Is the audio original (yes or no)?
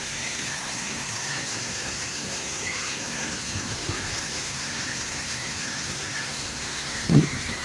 no